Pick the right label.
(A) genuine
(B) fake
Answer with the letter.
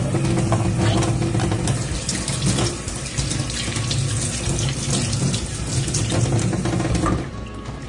A